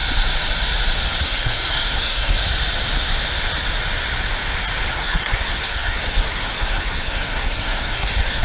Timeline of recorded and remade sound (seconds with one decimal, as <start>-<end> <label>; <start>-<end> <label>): 0.0-1.2 recorded; 1.2-2.4 remade; 2.4-4.9 recorded; 4.9-8.4 remade